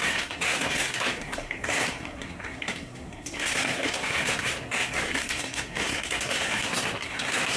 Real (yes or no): no